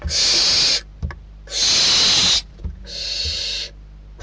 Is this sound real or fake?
real